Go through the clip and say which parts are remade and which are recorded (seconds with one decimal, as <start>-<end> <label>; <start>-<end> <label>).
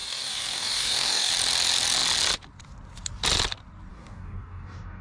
0.0-1.3 remade; 1.3-3.9 recorded; 3.9-5.0 remade